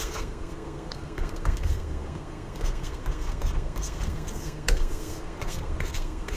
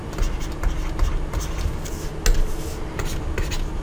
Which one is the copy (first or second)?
first